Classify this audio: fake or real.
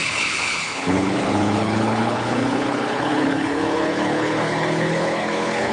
fake